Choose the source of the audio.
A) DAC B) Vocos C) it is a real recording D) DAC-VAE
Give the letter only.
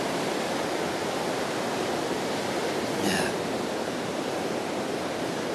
C